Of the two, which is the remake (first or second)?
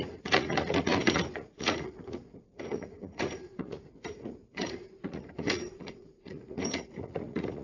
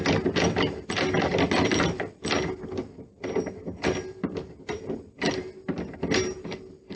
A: first